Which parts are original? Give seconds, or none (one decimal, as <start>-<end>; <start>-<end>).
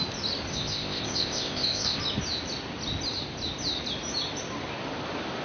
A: 0.0-0.5; 2.0-5.4